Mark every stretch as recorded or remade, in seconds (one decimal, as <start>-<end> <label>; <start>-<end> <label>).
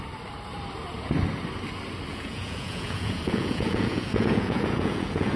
0.0-2.1 recorded; 2.1-5.4 remade